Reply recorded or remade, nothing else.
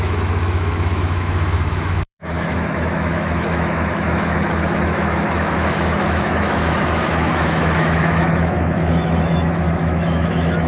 remade